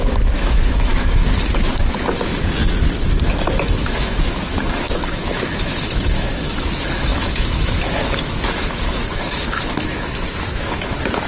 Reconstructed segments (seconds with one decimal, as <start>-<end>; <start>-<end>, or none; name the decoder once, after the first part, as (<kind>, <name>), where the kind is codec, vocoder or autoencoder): 0.0-1.2 (autoencoder, DAC-VAE); 1.8-2.3; 3.8-11.3